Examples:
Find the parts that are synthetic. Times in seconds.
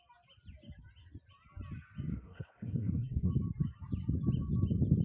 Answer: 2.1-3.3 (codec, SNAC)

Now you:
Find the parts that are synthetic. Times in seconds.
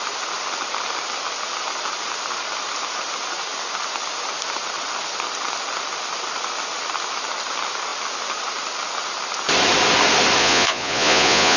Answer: 10.4-11.6 (vocoder, Vocos)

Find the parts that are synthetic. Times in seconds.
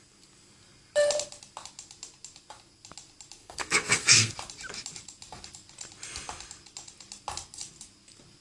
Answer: 3.4-4.3 (codec, SNAC)